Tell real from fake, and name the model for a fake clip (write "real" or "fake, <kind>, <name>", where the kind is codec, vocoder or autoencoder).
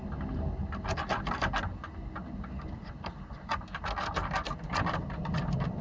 real